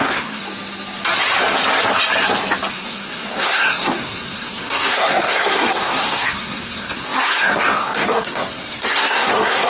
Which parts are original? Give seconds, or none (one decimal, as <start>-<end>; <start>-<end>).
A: 0.4-2.7